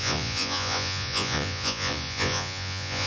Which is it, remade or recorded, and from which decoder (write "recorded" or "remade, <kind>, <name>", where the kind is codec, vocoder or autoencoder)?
remade, vocoder, Vocos